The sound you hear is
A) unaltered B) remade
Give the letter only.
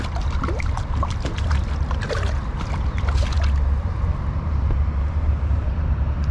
B